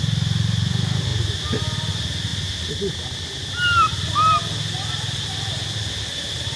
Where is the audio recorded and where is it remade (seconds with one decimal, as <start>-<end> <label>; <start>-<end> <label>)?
0.0-6.6 recorded